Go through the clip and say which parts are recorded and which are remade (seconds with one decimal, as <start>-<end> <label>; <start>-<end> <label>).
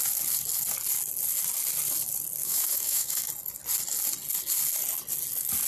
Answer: 0.0-2.4 recorded; 2.4-3.3 remade; 3.3-5.7 recorded